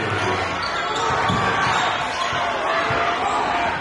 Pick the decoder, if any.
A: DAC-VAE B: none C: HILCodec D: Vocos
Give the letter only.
B